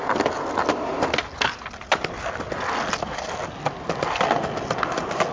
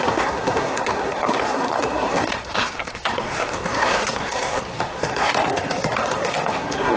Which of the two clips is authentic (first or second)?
first